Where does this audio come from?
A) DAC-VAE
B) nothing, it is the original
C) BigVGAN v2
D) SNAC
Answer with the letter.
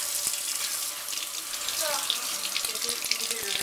B